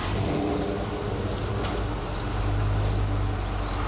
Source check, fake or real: real